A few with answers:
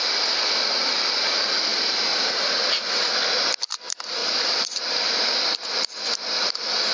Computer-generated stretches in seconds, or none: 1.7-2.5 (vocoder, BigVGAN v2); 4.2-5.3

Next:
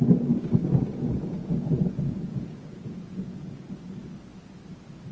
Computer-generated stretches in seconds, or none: 0.6-3.7 (vocoder, Vocos)

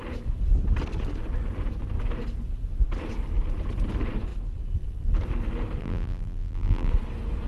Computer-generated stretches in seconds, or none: 5.8-6.9 (vocoder, BigVGAN v2)

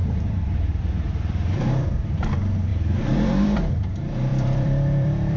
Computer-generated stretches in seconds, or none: 0.0-2.3 (vocoder, BigVGAN v2); 2.7-3.7; 4.3-5.4

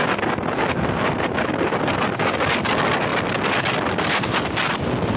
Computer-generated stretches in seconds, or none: none

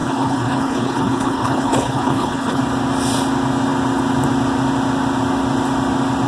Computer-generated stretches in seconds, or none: 0.0-2.6 (codec, HILCodec)

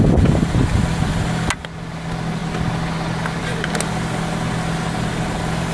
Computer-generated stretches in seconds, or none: none

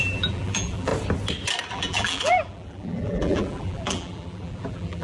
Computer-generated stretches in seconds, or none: 0.0-0.9 (vocoder, BigVGAN v2); 1.7-5.0